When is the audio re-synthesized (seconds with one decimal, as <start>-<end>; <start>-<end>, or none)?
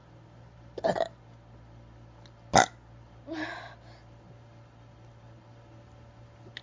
0.0-1.2